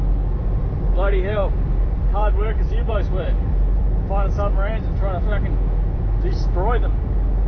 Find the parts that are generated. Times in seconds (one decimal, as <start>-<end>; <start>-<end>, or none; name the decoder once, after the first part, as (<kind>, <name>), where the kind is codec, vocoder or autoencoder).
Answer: 0.4-0.9 (vocoder, BigVGAN v2); 1.4-4.3